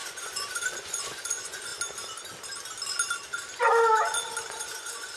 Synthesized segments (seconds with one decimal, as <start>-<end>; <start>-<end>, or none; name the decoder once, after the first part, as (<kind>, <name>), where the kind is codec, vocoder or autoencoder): 0.0-1.7 (vocoder, Vocos); 4.5-5.2